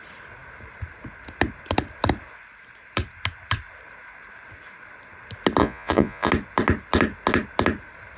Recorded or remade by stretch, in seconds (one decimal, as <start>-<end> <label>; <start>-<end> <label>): 0.0-5.6 recorded; 5.6-6.3 remade; 6.3-8.2 recorded